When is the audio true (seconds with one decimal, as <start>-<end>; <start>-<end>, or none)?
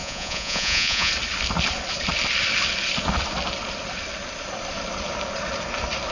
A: 1.1-6.1